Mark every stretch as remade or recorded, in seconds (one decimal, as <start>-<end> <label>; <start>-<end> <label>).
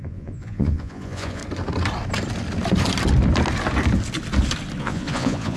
0.0-1.4 remade; 1.4-4.8 recorded; 4.8-5.6 remade